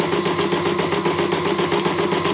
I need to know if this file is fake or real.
real